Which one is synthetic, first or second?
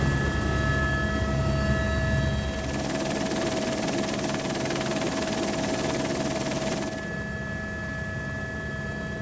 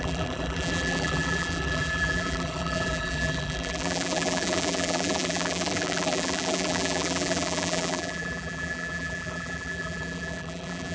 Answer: second